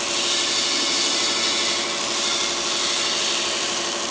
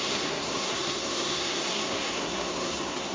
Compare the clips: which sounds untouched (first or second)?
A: first